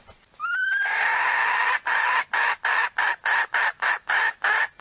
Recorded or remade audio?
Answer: recorded